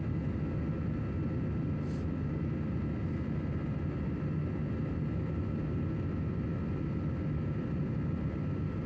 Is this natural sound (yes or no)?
yes